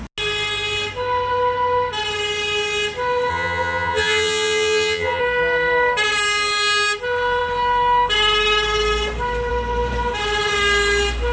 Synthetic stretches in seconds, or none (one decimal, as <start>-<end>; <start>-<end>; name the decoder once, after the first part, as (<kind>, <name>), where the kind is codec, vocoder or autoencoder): 3.3-5.2 (vocoder, HiFi-GAN)